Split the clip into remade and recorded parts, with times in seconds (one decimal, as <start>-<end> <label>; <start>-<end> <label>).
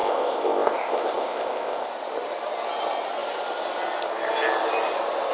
0.0-1.9 remade; 1.9-5.3 recorded